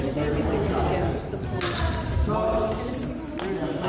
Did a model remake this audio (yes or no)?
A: no